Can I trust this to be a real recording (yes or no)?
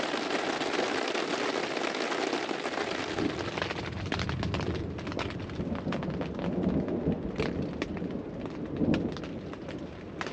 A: yes